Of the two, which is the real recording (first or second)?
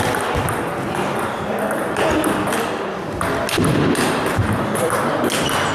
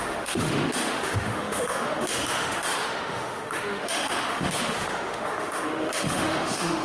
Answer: first